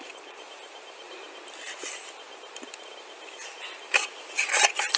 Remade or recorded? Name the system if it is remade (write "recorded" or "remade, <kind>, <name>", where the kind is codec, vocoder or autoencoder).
recorded